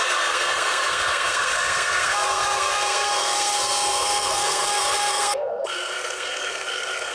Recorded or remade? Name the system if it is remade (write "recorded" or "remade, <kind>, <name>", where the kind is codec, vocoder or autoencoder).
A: remade, codec, SNAC